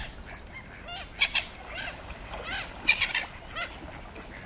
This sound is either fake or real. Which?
real